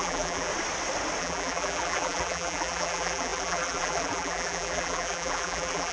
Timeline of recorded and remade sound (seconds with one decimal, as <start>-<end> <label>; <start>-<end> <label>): 0.0-0.5 remade; 0.5-1.2 recorded; 1.2-5.9 remade